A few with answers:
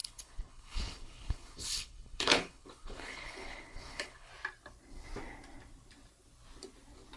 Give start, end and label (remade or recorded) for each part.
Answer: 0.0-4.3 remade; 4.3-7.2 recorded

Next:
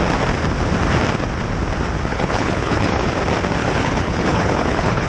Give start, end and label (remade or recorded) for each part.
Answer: 0.0-2.1 recorded; 2.1-3.2 remade; 3.2-3.6 recorded; 3.6-5.1 remade

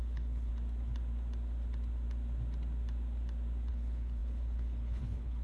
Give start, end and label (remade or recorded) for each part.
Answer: 0.0-0.5 remade; 0.5-3.7 recorded; 3.7-5.4 remade

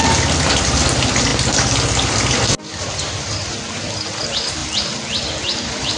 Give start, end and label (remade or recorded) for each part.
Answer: 0.0-6.0 recorded

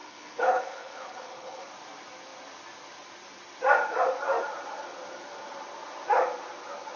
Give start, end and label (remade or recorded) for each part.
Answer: 0.0-1.7 remade; 1.7-7.0 recorded

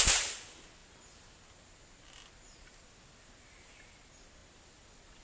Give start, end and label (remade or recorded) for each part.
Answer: 0.0-5.2 recorded

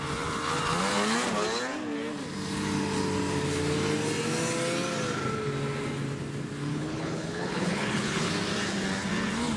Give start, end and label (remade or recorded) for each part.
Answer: 0.0-6.7 recorded; 6.7-8.3 remade; 8.3-9.6 recorded

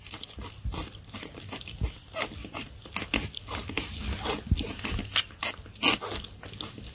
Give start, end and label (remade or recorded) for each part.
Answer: 0.0-6.9 recorded